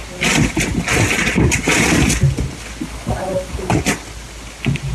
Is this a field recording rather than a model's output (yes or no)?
yes